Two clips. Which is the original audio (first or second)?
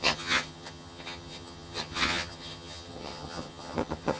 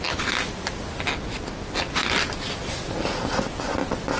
second